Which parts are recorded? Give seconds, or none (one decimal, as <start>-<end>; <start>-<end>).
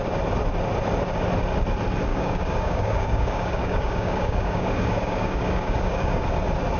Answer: 0.0-2.1; 6.2-6.8